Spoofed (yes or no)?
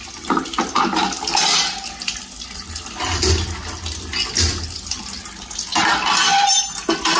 no